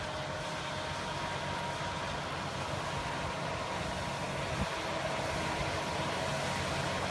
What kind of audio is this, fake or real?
real